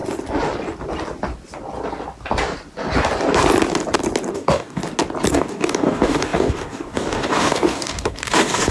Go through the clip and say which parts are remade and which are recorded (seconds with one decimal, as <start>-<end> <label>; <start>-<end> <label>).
0.0-4.3 recorded; 4.3-4.8 remade; 4.8-5.3 recorded; 5.3-8.7 remade